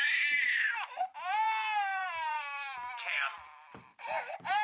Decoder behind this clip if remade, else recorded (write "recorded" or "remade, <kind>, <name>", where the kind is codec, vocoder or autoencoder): remade, vocoder, BigVGAN v2